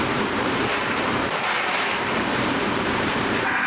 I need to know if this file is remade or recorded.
remade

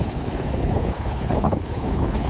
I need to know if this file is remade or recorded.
remade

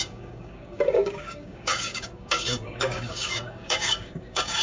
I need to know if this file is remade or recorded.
remade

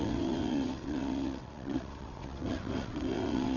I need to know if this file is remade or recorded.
remade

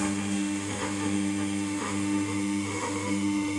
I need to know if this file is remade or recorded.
remade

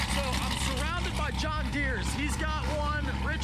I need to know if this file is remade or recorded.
recorded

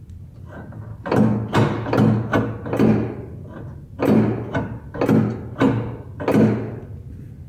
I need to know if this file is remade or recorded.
recorded